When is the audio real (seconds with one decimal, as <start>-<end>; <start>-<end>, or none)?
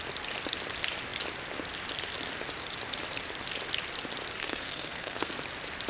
0.0-4.4; 5.3-5.9